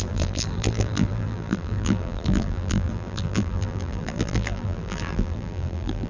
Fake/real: fake